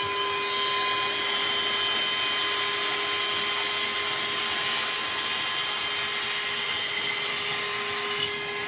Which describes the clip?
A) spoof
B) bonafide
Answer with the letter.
B